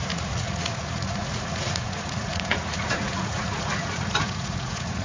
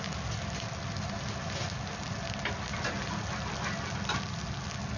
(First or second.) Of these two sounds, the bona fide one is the second